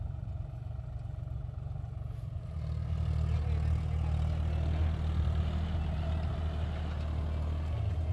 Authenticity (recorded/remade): recorded